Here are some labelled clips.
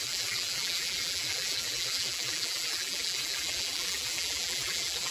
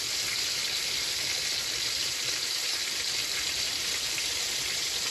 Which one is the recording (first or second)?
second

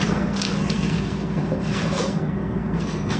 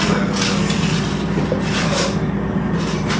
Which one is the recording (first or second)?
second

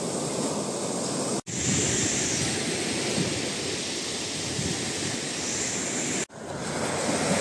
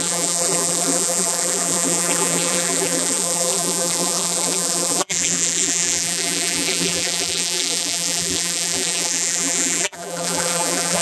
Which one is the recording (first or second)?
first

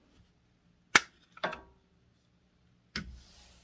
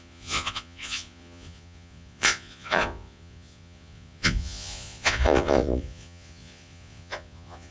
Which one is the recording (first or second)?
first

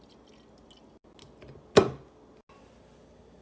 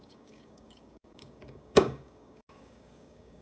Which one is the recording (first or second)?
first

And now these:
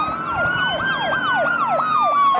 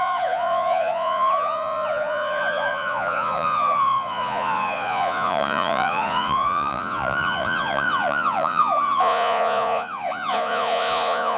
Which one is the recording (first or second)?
first